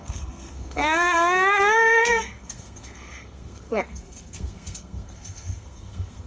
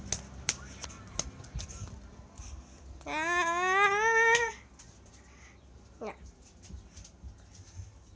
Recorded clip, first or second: second